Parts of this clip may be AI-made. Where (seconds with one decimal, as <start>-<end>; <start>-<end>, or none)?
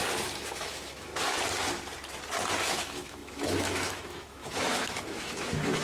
0.5-1.1; 2.7-5.8